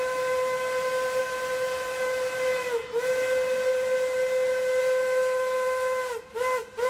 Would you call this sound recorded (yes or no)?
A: yes